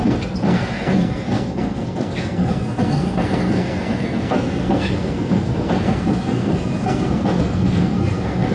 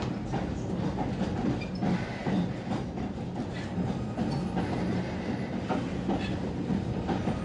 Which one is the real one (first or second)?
second